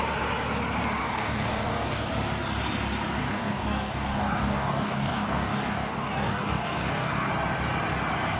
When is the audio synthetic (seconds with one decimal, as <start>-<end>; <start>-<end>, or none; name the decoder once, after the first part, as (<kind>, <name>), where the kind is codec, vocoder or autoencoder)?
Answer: 1.0-2.1 (codec, DAC); 3.2-7.3